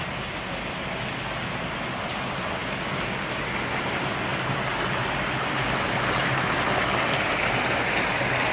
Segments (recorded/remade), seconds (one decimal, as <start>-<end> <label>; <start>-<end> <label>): 0.0-8.5 recorded